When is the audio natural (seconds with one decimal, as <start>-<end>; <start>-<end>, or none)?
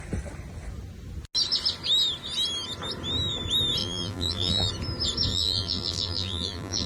0.0-3.8; 4.7-5.3